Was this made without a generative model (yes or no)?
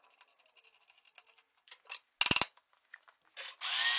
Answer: yes